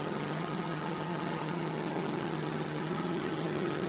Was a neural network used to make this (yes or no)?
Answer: yes